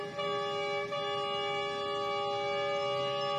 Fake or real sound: real